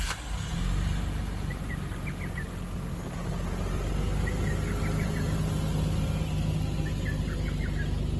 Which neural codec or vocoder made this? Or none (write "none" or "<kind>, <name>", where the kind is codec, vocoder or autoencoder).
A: none